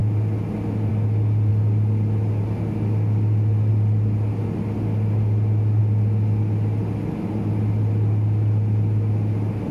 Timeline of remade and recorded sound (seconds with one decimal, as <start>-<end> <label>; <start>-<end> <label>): 0.0-9.7 recorded